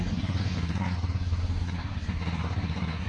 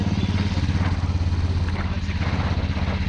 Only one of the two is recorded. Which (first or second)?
second